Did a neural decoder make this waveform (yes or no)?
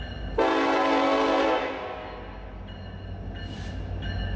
no